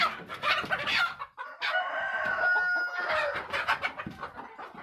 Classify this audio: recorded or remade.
recorded